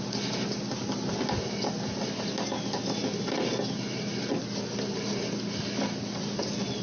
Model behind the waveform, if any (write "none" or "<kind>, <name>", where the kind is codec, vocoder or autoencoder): none